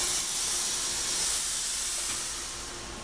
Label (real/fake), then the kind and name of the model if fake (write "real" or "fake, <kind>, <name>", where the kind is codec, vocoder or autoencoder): real